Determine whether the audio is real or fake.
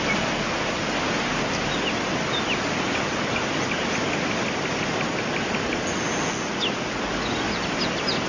real